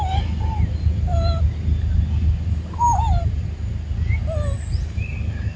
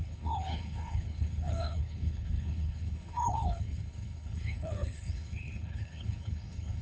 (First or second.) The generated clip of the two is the second